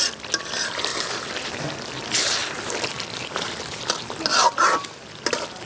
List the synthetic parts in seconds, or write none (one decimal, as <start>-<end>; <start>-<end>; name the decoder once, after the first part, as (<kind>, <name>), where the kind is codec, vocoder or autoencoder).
none